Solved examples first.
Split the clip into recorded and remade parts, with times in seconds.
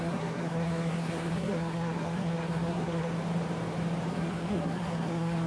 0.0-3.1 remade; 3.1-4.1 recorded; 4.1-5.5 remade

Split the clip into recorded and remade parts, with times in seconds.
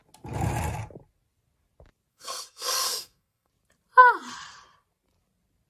0.0-2.1 recorded; 2.1-3.5 remade; 3.5-5.7 recorded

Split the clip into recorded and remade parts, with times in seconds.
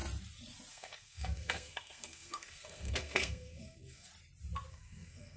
0.0-0.7 recorded; 0.7-4.1 remade; 4.1-4.7 recorded; 4.7-5.4 remade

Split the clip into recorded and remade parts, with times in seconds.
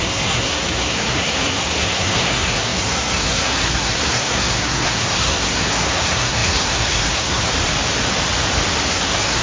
0.0-7.4 remade; 7.4-8.9 recorded; 8.9-9.4 remade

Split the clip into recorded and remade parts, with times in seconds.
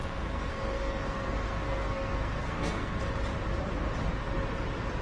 0.0-3.0 remade; 3.0-5.0 recorded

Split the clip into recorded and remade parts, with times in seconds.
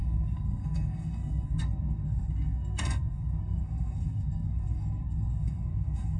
0.0-6.2 remade